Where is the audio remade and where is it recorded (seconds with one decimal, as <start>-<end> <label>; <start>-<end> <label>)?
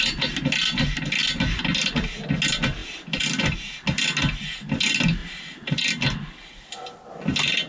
0.0-5.2 recorded; 5.2-5.9 remade; 5.9-7.7 recorded